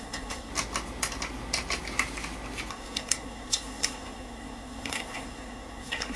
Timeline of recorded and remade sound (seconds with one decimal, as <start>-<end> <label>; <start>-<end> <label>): 0.0-0.5 remade; 0.5-2.7 recorded; 2.7-6.2 remade